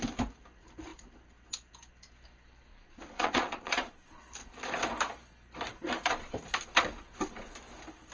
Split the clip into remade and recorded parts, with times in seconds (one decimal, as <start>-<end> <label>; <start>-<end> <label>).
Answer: 0.0-2.7 recorded; 2.7-4.2 remade; 4.2-8.1 recorded